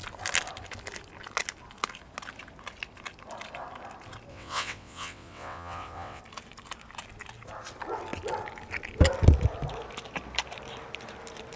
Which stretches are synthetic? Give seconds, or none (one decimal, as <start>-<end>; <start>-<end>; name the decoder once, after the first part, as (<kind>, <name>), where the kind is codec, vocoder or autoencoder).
4.3-6.2 (vocoder, WaveNeXt)